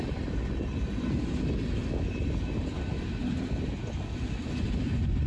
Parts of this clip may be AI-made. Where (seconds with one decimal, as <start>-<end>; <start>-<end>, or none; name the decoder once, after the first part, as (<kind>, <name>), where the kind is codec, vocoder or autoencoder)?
none